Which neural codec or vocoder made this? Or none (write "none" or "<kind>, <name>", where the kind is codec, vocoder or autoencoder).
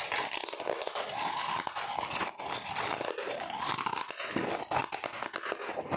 none